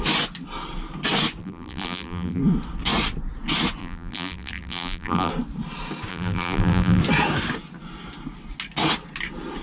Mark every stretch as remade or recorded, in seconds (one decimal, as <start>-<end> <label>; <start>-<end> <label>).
0.0-1.4 recorded; 1.4-2.4 remade; 2.4-3.8 recorded; 3.8-5.3 remade; 5.3-6.1 recorded; 6.1-7.0 remade; 7.0-9.6 recorded